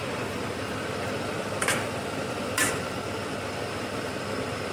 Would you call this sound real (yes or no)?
no